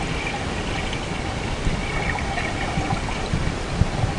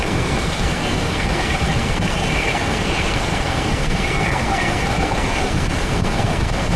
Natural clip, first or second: first